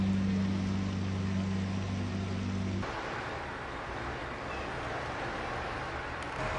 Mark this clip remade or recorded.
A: recorded